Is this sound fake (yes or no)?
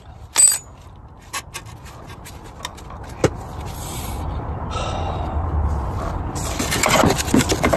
no